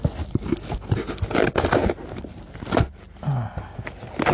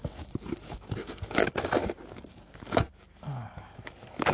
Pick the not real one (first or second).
second